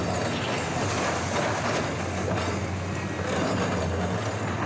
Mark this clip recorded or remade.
recorded